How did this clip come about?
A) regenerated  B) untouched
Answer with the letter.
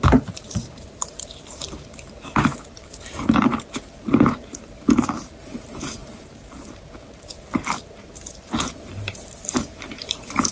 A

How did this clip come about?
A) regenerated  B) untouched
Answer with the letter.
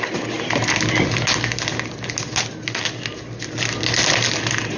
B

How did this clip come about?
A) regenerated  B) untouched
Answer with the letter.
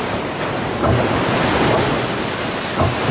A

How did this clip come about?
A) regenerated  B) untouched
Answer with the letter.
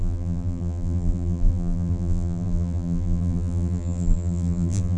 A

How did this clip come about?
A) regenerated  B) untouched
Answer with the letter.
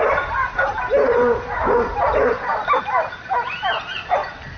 B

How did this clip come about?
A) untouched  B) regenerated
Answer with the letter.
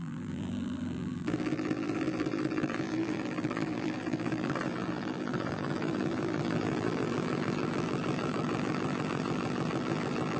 B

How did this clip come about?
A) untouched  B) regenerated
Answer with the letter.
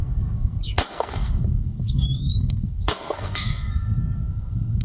B